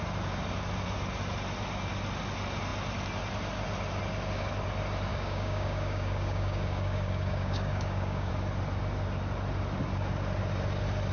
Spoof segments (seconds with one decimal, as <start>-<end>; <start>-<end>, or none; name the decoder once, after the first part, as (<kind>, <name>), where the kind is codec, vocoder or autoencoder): 5.1-8.3 (codec, DAC)